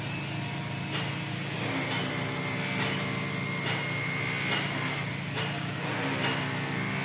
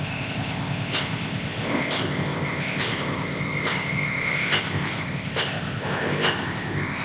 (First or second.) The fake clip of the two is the second